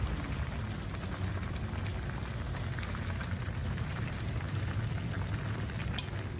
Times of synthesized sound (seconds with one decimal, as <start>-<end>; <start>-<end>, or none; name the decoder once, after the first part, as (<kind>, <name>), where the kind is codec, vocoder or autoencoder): 3.6-4.7 (vocoder, BigVGAN v2)